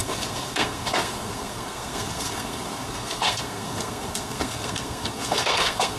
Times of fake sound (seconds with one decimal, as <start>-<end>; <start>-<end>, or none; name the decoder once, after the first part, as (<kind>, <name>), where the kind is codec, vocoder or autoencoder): 0.0-6.0 (codec, SNAC)